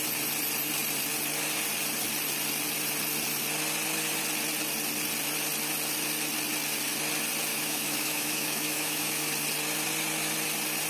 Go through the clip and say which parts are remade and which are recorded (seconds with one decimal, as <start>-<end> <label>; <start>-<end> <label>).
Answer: 0.0-7.5 recorded; 7.5-9.3 remade; 9.3-10.9 recorded